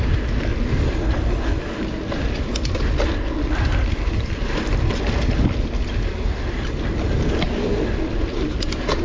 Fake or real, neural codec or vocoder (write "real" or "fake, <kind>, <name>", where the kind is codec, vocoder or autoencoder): real